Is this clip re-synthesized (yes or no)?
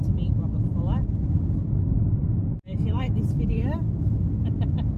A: no